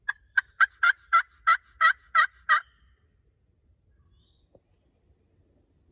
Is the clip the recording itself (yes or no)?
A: yes